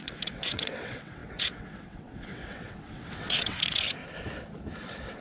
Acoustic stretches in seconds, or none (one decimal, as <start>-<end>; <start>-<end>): 4.0-4.8